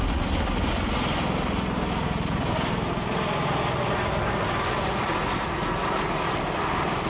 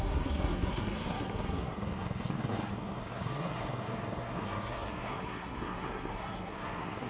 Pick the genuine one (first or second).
first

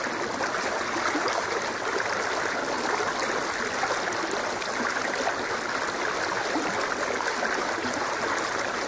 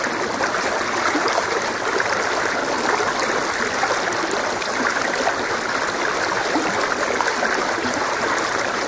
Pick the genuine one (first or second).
first